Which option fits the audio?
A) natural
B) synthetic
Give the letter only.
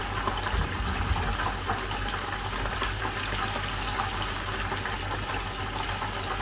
A